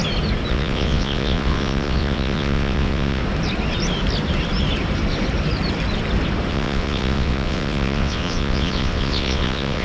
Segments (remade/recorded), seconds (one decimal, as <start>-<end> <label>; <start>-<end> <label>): 0.0-0.5 recorded; 0.5-3.2 remade; 3.2-6.5 recorded; 6.5-9.8 remade